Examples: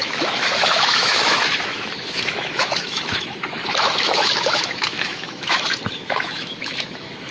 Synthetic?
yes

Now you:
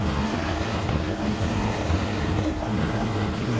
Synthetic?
yes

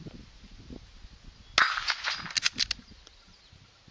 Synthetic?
no